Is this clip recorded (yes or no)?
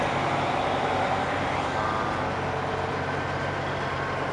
yes